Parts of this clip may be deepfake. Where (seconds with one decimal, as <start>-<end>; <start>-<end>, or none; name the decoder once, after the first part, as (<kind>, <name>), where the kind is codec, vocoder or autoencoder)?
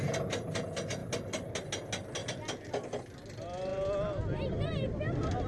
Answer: none